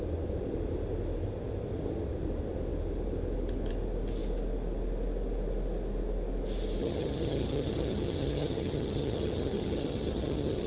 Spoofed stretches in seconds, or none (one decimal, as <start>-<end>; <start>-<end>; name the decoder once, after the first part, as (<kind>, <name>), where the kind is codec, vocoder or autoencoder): 6.8-10.7 (vocoder, HiFi-GAN)